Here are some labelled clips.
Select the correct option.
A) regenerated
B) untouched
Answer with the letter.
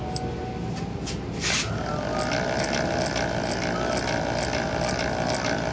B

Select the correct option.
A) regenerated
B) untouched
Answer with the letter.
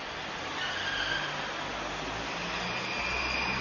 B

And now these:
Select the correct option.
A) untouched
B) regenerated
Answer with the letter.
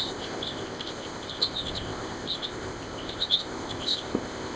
B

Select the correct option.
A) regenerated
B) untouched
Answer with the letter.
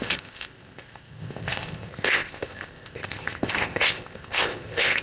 A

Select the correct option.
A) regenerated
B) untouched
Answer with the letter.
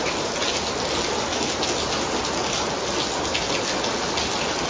B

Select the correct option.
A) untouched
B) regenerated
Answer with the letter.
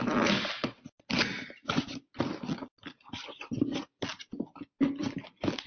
A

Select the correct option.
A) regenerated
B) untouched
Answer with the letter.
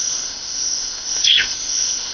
A